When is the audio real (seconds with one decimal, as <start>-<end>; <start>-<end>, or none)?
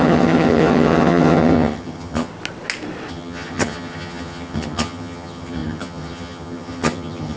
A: 2.3-3.1